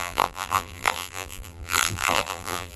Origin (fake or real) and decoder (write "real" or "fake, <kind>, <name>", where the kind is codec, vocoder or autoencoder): fake, vocoder, BigVGAN v2